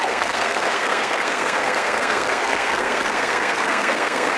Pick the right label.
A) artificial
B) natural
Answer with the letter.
A